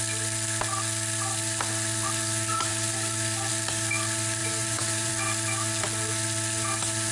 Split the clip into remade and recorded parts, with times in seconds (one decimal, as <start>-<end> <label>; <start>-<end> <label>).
0.0-4.4 recorded; 4.4-5.1 remade; 5.1-7.1 recorded